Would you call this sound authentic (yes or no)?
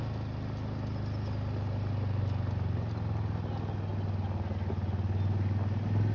yes